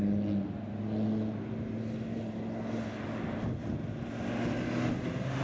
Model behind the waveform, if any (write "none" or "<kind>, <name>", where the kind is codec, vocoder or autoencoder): none